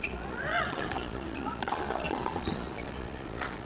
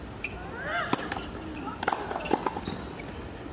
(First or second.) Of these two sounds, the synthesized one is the first